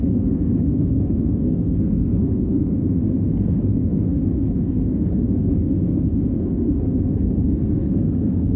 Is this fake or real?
fake